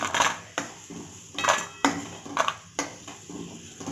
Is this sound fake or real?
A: real